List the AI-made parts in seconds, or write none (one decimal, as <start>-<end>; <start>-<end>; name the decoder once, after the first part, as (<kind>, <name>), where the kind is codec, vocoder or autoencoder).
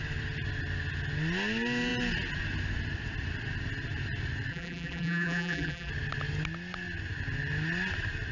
4.5-5.9 (vocoder, BigVGAN v2)